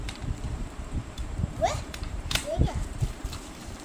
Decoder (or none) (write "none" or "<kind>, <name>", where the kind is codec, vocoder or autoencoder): vocoder, BigVGAN v2